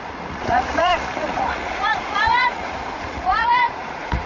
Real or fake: fake